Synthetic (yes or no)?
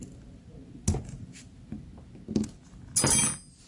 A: no